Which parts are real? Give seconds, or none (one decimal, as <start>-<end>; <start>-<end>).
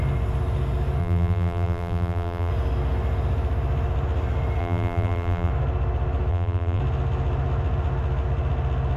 0.0-1.0; 2.5-4.6; 5.5-6.3; 6.8-9.0